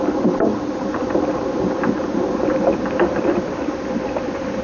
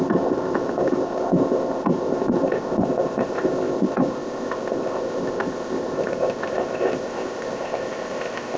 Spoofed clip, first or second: second